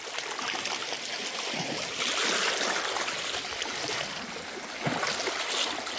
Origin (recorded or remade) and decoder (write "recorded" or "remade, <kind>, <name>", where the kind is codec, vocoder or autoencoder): recorded